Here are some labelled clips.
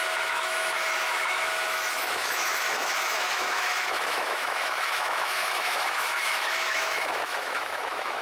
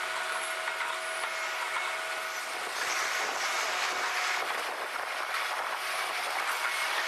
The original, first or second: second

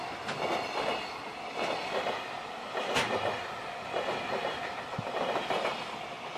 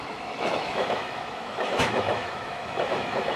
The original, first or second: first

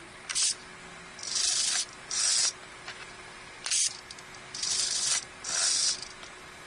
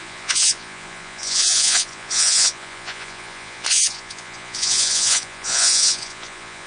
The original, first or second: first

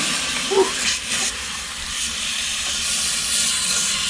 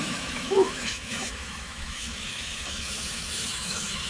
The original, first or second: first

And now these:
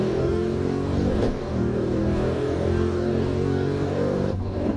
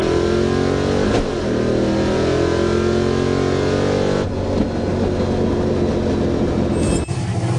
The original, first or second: second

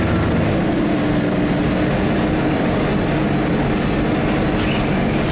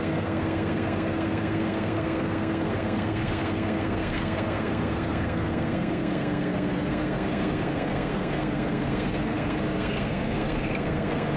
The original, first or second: first